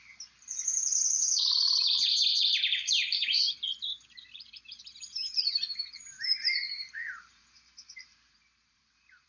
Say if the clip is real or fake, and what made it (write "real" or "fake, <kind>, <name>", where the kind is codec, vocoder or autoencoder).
fake, vocoder, BigVGAN v2